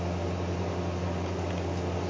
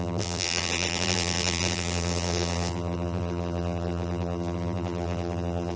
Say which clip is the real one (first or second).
first